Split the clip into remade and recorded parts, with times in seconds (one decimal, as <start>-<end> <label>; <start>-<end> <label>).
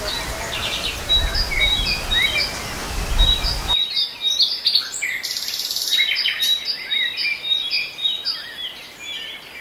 0.0-0.6 recorded; 0.6-1.9 remade; 1.9-9.6 recorded